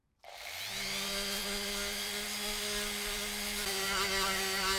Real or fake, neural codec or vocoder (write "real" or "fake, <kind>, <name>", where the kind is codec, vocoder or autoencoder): real